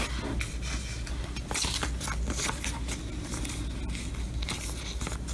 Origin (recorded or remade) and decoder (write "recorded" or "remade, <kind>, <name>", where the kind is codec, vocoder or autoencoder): recorded